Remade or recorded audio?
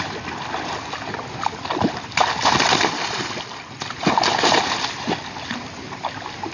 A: recorded